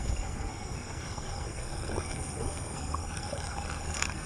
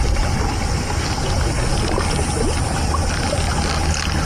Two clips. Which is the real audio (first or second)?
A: second